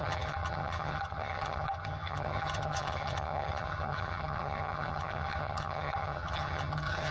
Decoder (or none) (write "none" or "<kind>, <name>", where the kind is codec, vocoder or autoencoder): vocoder, HiFi-GAN